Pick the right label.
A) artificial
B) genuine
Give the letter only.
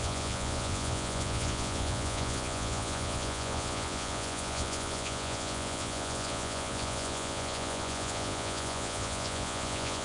A